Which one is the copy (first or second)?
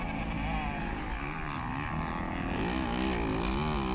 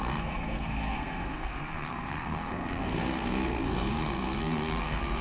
second